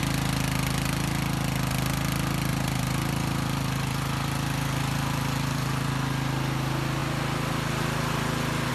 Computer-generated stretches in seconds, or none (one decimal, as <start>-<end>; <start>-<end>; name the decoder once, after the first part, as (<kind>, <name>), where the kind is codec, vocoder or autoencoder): 2.5-5.9 (vocoder, BigVGAN v2)